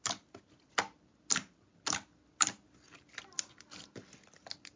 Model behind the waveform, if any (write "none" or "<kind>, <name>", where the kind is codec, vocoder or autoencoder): none